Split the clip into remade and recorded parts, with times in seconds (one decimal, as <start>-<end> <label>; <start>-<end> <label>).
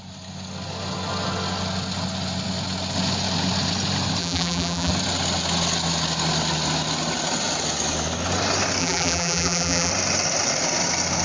0.0-4.2 recorded; 4.2-4.9 remade; 4.9-8.8 recorded; 8.8-9.9 remade; 9.9-11.2 recorded